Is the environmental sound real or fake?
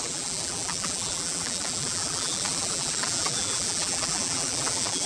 fake